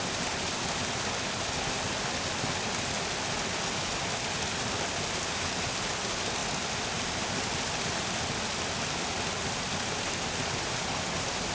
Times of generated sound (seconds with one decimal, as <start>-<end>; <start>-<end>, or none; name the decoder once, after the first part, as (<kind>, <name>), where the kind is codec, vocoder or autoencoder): none